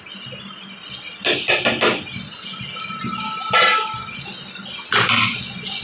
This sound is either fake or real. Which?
real